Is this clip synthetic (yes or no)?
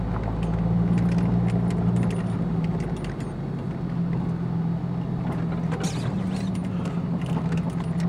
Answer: no